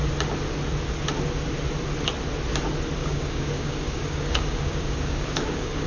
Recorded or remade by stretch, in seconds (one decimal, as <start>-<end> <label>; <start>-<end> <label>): 0.0-3.0 recorded; 3.0-5.9 remade